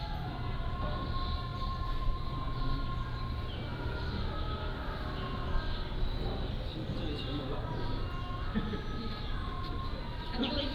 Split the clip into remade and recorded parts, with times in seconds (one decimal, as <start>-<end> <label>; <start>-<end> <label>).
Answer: 0.0-10.7 recorded